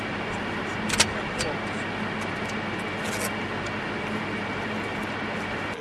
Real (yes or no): yes